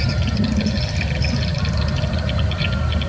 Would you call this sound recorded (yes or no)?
yes